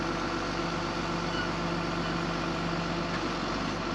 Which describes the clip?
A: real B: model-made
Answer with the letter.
A